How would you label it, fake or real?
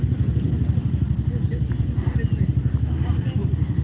real